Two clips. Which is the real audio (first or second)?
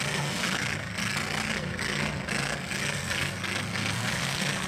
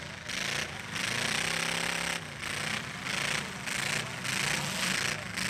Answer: second